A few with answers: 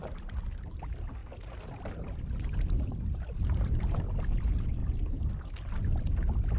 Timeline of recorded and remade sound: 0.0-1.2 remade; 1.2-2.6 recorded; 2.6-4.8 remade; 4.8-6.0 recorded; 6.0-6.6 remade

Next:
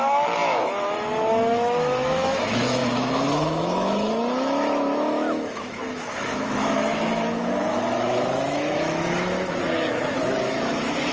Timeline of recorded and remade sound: 0.0-11.1 remade

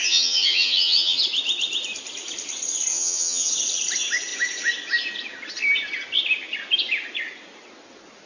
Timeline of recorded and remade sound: 0.0-1.2 remade; 1.2-2.9 recorded; 2.9-3.5 remade; 3.5-8.3 recorded

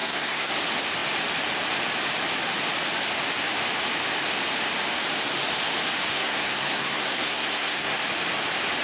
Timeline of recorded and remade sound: 0.0-0.5 remade; 0.5-6.1 recorded; 6.1-8.0 remade; 8.0-8.8 recorded

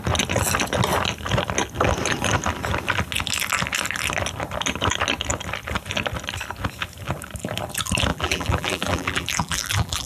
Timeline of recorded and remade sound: 0.0-8.1 recorded; 8.1-10.1 remade

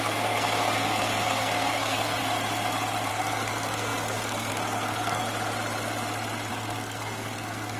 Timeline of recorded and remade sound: 0.0-2.2 remade; 2.2-3.1 recorded; 3.1-5.2 remade; 5.2-6.5 recorded; 6.5-7.8 remade

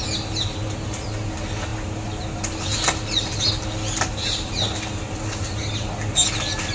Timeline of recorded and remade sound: 0.0-6.7 recorded

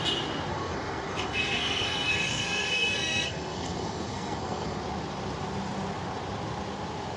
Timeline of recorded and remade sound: 0.0-0.5 recorded; 0.5-4.8 remade; 4.8-7.2 recorded